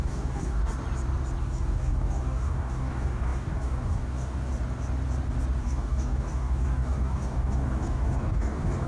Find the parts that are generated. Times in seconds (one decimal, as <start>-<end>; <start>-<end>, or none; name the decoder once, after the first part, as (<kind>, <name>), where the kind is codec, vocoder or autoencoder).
0.0-0.6 (codec, DAC); 1.4-4.5; 5.6-8.9